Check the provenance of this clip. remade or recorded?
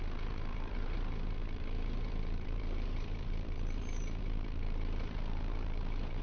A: remade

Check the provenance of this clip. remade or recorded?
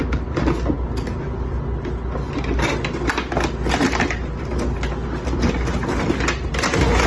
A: recorded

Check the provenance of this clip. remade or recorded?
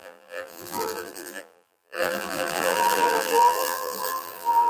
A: remade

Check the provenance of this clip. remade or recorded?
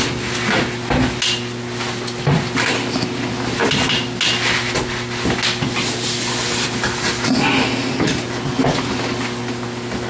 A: recorded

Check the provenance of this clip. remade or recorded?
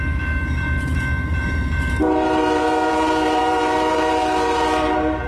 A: remade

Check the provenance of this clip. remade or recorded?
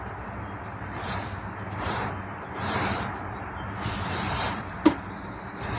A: remade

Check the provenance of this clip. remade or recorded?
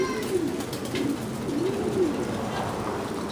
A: recorded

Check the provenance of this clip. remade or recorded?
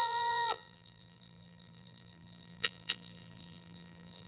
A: remade